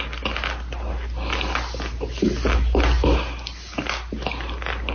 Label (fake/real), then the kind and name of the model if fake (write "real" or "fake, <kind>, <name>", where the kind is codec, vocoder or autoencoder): real